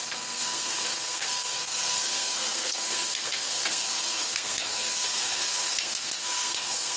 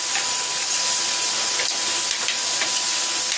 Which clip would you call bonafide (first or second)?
second